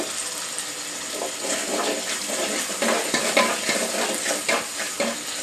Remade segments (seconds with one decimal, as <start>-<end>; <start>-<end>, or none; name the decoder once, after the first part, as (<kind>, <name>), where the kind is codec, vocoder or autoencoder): 3.0-4.5 (vocoder, BigVGAN v2)